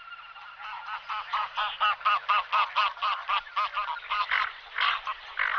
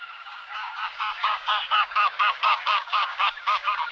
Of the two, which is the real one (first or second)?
first